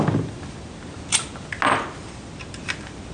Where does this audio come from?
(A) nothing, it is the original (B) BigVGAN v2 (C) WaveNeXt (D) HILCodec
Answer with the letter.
A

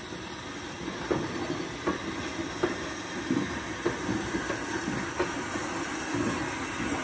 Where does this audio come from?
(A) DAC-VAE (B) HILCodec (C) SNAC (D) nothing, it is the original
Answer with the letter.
D